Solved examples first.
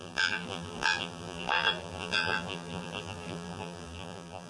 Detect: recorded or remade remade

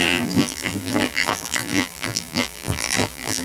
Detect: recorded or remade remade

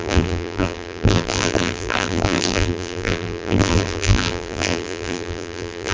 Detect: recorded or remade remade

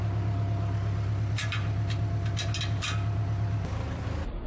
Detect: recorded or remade recorded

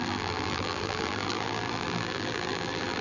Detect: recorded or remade remade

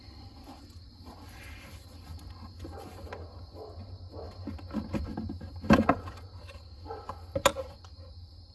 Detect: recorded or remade recorded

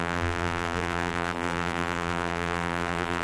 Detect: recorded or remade remade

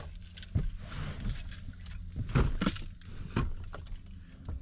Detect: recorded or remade recorded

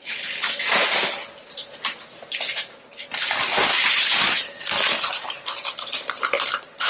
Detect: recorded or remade remade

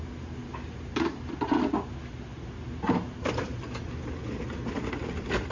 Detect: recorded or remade recorded